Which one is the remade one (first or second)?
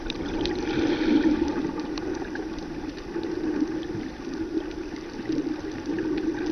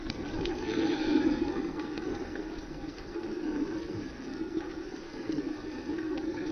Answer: second